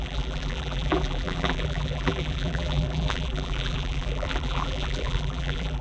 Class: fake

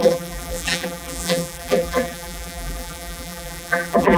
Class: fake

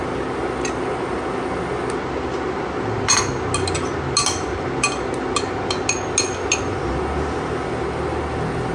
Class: real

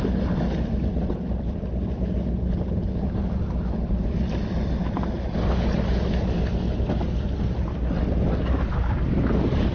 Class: real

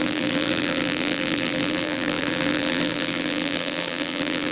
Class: fake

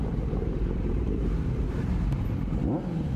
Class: fake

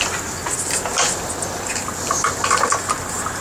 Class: real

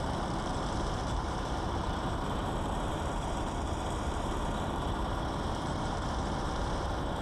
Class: fake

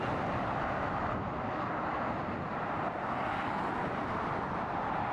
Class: real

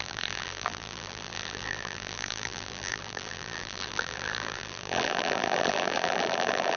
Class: fake